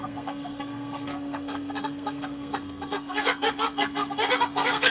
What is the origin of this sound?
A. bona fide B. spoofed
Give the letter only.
B